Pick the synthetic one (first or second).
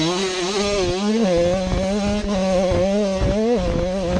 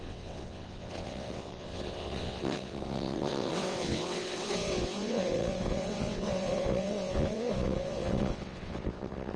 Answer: second